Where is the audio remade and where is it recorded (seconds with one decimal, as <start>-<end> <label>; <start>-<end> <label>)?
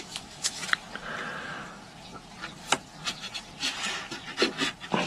0.0-0.6 remade; 0.6-1.4 recorded; 1.4-1.8 remade; 1.8-5.1 recorded